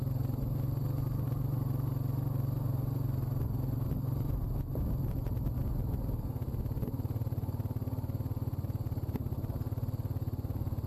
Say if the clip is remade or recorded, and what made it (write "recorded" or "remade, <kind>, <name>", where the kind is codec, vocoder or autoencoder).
recorded